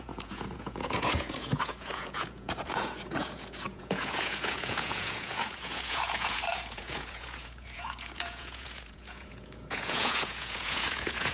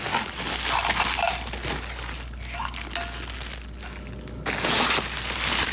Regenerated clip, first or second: first